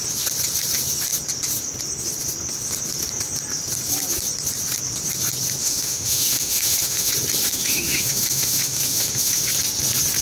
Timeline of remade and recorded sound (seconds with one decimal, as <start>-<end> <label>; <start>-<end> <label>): 0.0-5.6 recorded; 5.6-7.1 remade; 7.1-7.5 recorded; 7.5-9.4 remade; 9.4-10.2 recorded